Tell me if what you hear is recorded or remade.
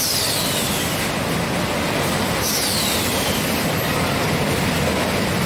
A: remade